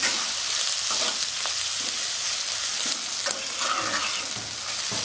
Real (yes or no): yes